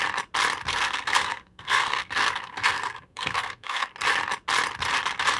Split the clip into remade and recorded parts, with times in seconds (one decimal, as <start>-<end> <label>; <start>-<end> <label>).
0.0-0.7 recorded; 0.7-3.9 remade; 3.9-5.4 recorded